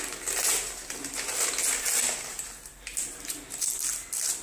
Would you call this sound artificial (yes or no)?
no